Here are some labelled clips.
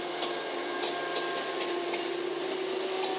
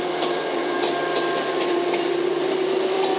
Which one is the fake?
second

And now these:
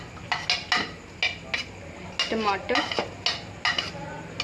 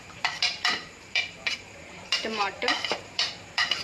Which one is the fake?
second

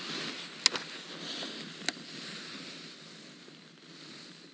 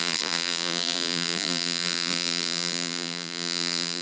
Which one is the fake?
second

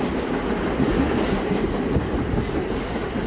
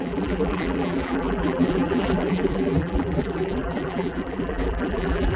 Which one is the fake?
second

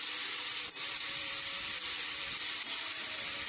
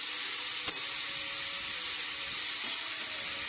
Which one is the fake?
first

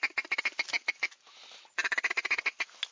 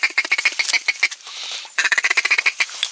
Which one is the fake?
second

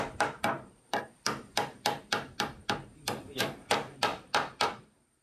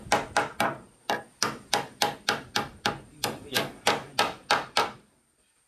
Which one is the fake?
first